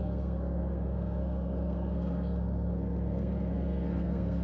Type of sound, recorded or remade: remade